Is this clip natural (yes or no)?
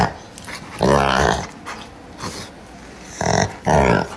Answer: yes